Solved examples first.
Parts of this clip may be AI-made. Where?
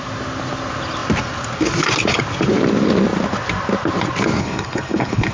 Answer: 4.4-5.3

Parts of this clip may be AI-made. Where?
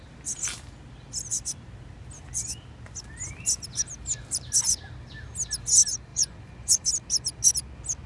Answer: 6.1-6.9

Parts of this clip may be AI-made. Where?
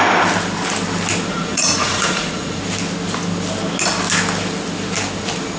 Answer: 1.3-2.6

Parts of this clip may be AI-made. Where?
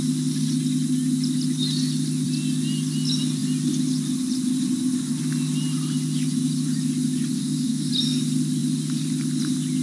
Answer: 7.4-7.9